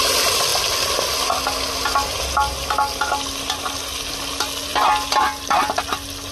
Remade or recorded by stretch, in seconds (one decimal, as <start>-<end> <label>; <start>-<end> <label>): 0.0-6.3 recorded